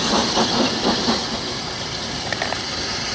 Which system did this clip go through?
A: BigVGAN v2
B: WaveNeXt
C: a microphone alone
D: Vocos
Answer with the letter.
A